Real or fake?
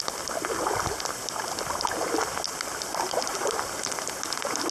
real